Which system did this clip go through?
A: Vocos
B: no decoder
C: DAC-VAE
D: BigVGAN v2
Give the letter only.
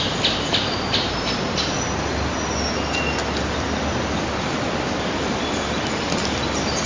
B